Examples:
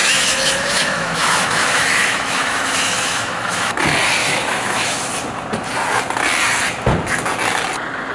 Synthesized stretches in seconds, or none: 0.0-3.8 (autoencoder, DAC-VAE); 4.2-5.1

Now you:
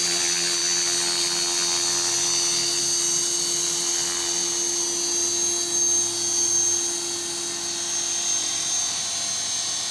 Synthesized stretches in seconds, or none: none

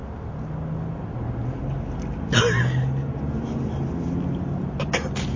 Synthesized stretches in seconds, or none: none

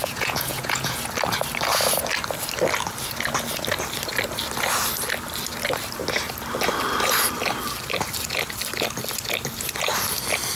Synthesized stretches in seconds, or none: 0.0-1.0 (vocoder, Vocos)

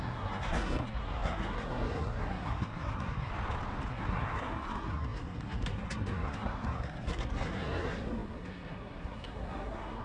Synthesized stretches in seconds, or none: 0.0-3.3 (codec, SNAC); 3.9-10.0

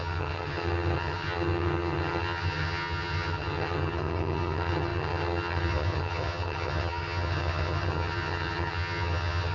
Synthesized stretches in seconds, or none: 0.0-9.5 (vocoder, HiFi-GAN)

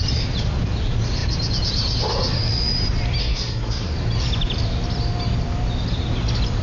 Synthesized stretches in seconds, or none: 3.2-3.9 (codec, SNAC)